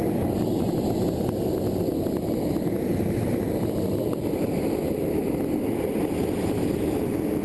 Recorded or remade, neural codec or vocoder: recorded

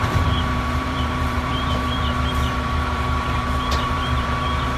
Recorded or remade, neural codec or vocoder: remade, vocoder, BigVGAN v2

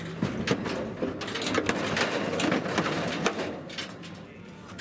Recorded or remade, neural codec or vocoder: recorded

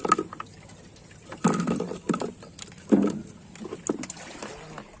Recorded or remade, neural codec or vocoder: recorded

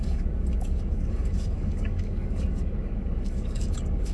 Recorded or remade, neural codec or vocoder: remade, codec, DAC